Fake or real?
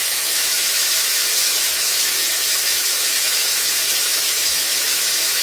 fake